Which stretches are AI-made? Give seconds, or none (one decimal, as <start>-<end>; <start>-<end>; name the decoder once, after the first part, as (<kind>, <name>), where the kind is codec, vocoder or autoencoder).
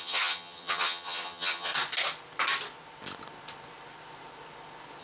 0.0-1.7 (vocoder, HiFi-GAN)